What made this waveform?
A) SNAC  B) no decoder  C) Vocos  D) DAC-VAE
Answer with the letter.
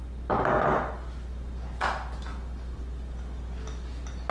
B